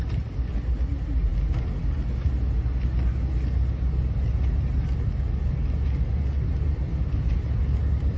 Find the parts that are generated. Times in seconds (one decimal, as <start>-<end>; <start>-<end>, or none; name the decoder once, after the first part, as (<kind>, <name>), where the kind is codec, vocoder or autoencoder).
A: none